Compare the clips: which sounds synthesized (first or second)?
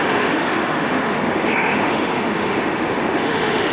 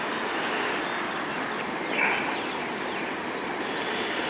first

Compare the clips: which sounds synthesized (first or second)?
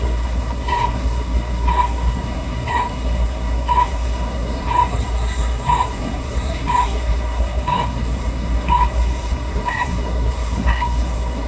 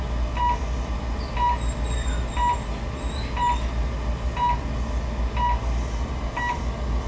first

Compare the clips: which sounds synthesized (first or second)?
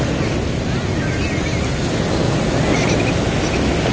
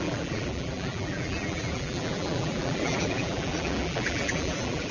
second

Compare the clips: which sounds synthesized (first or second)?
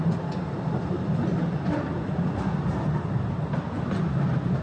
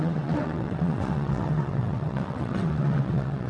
second